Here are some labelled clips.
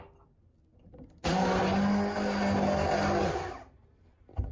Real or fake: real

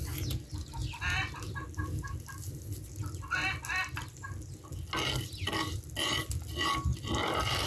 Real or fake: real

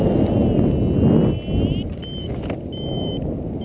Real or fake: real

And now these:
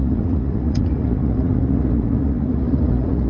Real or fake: fake